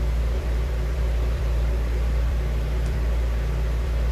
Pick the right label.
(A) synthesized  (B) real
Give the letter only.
A